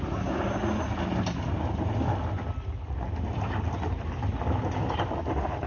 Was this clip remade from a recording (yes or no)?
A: no